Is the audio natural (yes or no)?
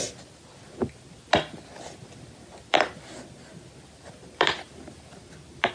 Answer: yes